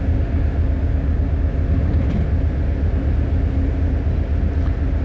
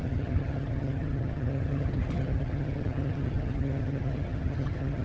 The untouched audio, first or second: first